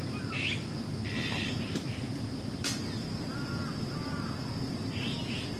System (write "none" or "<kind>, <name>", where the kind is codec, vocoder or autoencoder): vocoder, BigVGAN v2